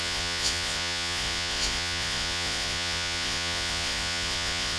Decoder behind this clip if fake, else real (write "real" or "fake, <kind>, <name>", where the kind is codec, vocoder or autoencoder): fake, vocoder, Vocos